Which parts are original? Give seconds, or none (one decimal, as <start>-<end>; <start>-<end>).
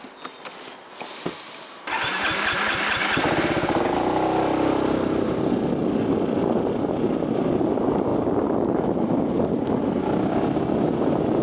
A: 0.0-11.4